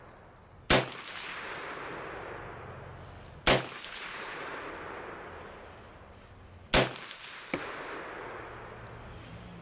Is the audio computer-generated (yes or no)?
no